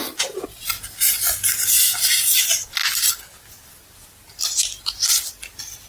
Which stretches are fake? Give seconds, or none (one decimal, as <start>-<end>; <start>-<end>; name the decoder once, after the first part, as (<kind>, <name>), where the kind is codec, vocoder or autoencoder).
none